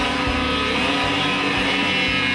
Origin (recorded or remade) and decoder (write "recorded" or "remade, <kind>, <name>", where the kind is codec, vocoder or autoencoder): recorded